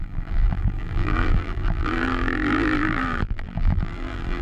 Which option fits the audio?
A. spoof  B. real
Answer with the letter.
A